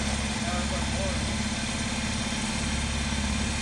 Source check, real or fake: real